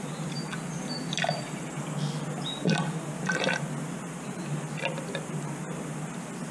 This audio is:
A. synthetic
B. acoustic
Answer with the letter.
B